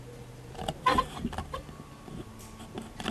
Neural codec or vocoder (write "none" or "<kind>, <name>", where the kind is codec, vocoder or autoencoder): none